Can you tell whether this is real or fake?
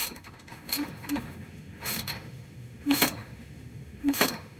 fake